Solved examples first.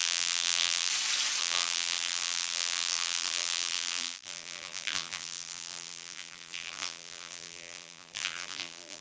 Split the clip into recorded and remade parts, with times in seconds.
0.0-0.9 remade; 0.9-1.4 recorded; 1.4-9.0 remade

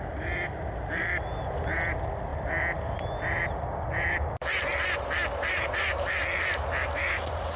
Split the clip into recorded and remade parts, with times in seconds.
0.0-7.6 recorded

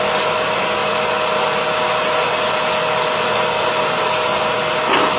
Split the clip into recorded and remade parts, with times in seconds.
0.0-5.2 recorded